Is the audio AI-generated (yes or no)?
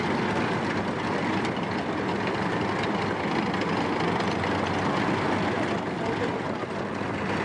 no